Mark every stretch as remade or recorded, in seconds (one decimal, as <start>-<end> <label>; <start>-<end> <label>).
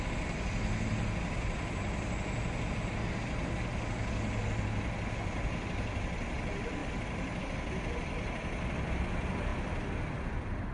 0.0-6.8 recorded; 6.8-7.4 remade; 7.4-10.7 recorded